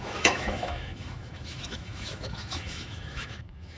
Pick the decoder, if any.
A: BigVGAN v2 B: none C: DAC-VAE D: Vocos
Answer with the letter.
C